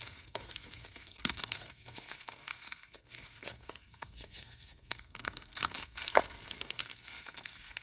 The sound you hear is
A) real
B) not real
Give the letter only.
B